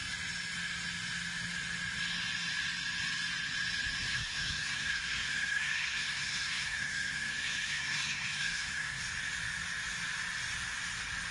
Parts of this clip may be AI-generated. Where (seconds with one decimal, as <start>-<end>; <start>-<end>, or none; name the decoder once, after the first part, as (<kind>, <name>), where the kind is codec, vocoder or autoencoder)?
4.1-9.0 (codec, SNAC)